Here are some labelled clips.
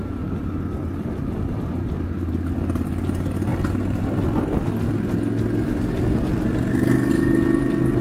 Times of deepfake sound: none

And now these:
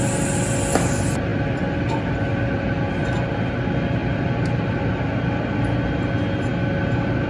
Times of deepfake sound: none

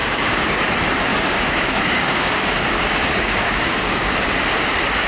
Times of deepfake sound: 0.0-0.6 (codec, DAC); 1.1-4.2

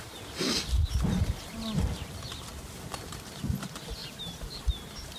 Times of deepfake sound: 4.0-4.6 (vocoder, BigVGAN v2)

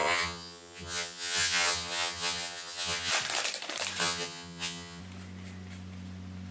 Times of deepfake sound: 0.0-3.1 (vocoder, HiFi-GAN); 4.0-5.0

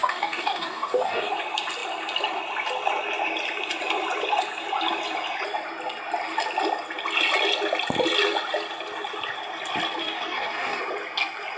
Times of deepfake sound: 0.0-1.3 (codec, DAC); 10.0-10.8

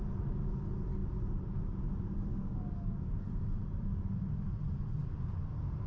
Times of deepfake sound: 2.3-3.1 (codec, DAC)

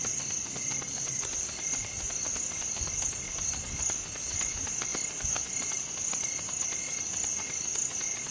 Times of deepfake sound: none